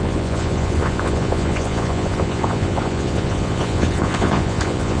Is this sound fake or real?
fake